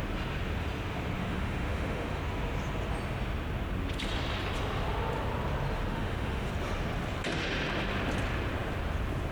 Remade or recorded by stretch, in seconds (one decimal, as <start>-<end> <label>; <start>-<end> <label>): 0.0-1.2 recorded; 1.2-2.2 remade; 2.2-5.9 recorded; 5.9-6.5 remade; 6.5-9.3 recorded